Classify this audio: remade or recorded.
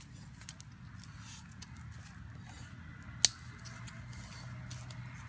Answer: recorded